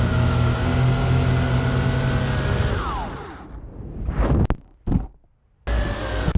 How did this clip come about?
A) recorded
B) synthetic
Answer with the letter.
A